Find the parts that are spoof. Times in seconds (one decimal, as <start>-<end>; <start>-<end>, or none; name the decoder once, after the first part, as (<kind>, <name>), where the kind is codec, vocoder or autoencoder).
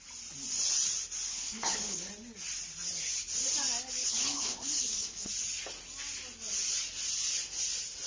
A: 1.3-2.1 (codec, HILCodec); 4.0-5.3